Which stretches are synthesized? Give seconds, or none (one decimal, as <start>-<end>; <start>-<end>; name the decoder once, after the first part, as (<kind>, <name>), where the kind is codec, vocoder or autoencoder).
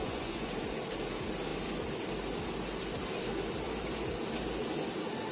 0.0-0.5 (vocoder, Vocos)